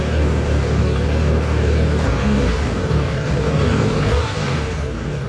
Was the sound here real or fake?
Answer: fake